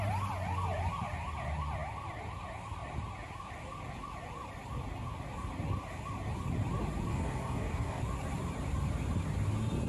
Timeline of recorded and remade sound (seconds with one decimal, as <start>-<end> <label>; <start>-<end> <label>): 0.0-7.1 recorded; 7.1-8.0 remade; 8.0-9.9 recorded